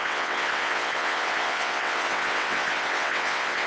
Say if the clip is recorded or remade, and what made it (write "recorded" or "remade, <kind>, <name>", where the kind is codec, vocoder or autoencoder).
remade, vocoder, WaveNeXt